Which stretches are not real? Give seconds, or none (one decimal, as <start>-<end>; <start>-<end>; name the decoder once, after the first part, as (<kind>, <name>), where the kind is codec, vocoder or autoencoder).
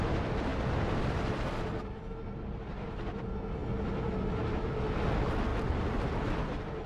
none